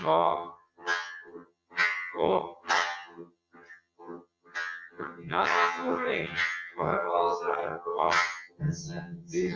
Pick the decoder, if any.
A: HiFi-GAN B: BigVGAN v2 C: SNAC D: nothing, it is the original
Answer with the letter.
A